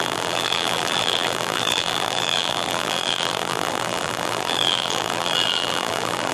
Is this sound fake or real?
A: fake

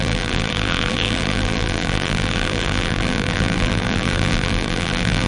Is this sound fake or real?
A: fake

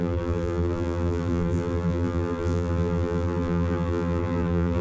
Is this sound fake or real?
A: fake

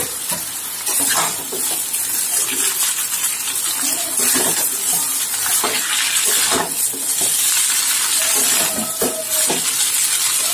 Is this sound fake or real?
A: real